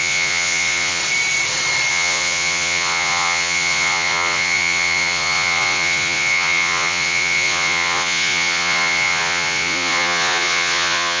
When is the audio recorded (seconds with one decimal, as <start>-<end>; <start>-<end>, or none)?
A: 1.0-1.9